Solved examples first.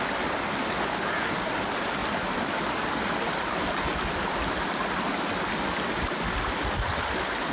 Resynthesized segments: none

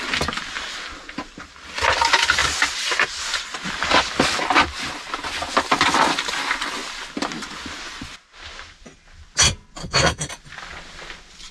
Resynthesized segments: 9.8-10.3

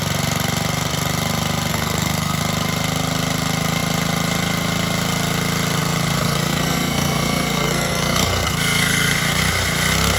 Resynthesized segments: 1.7-2.4; 6.2-9.2

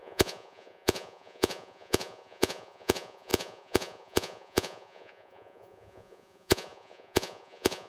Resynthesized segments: 0.0-7.9

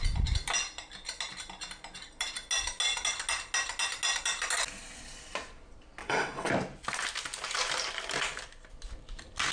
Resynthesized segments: 6.0-6.5

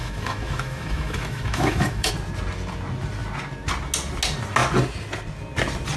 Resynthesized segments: 0.0-2.1

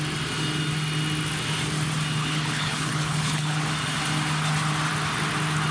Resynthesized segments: 2.2-3.6